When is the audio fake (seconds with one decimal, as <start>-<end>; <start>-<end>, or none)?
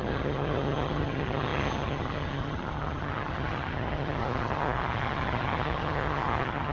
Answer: 0.0-6.7